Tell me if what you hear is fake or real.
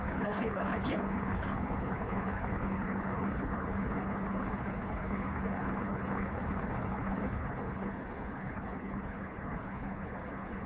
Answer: fake